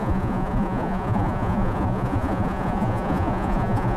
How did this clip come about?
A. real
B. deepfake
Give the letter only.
B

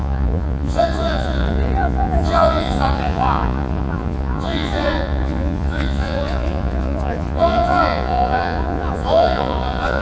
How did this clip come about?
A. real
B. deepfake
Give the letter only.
B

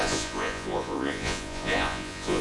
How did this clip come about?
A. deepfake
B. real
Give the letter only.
A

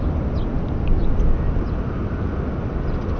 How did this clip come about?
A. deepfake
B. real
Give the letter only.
B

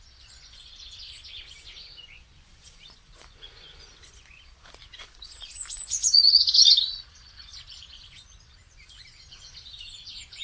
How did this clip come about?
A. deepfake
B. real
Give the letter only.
A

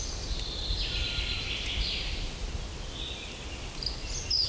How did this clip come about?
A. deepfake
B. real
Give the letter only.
B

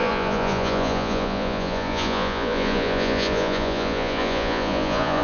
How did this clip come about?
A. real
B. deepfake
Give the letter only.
B